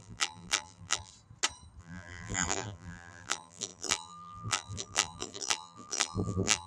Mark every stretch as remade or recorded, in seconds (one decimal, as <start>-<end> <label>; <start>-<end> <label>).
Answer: 0.0-1.1 remade; 1.1-1.8 recorded; 1.8-6.7 remade